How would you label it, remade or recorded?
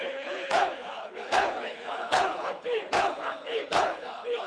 remade